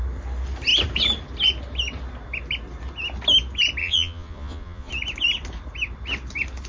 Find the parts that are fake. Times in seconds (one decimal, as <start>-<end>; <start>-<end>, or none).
3.8-4.9